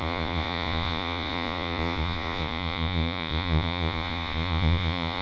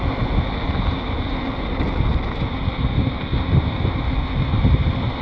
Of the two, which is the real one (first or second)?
second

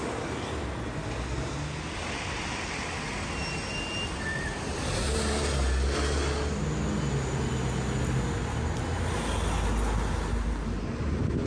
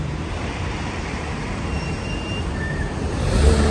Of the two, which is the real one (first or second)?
first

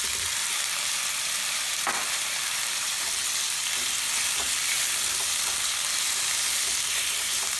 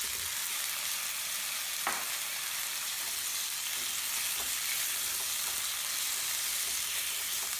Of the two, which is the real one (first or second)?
second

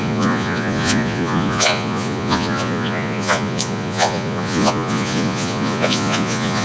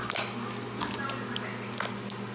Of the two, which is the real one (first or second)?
second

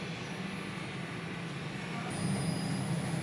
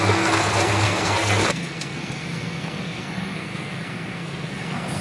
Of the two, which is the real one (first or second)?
first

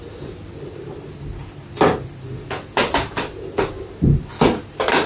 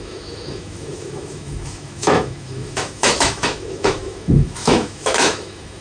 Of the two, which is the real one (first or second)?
first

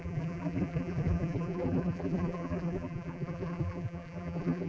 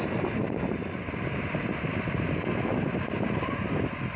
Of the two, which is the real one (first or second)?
second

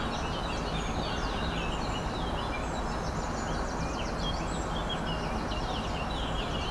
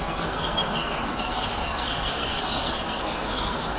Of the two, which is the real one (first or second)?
first